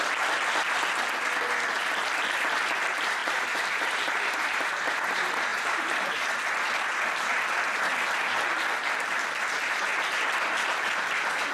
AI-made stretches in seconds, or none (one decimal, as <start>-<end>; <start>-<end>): 3.2-4.9; 5.5-6.3